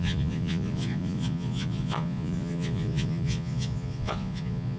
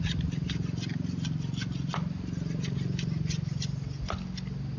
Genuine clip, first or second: second